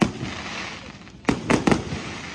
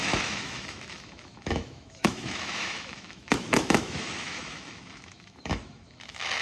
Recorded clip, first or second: first